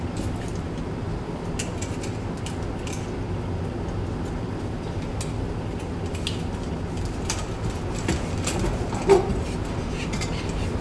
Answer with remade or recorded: recorded